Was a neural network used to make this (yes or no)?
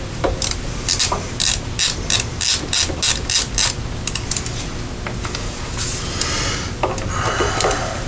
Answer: no